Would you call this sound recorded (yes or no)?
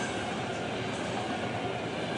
yes